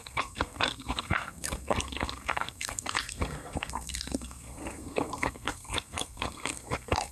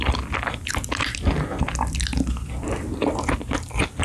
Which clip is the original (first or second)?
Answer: second